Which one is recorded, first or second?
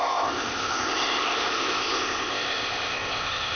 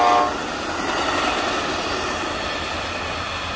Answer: second